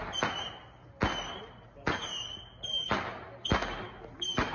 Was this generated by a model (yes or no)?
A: no